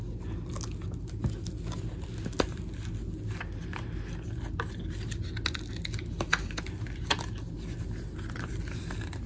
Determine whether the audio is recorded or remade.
recorded